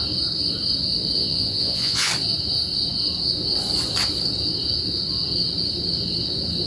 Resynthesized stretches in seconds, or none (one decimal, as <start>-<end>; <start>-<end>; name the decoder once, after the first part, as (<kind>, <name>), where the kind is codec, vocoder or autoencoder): 1.2-2.1 (vocoder, Vocos)